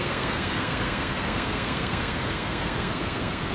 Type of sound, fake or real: fake